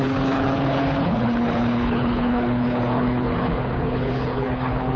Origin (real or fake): fake